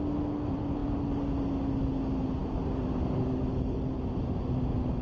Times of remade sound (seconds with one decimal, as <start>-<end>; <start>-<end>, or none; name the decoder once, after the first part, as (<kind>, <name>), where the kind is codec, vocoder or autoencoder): none